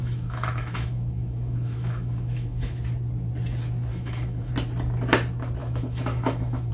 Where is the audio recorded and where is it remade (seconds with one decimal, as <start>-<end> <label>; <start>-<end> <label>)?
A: 0.0-2.8 remade; 2.8-3.9 recorded; 3.9-4.5 remade; 4.5-5.6 recorded; 5.6-6.7 remade